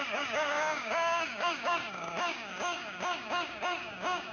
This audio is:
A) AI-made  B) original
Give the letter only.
A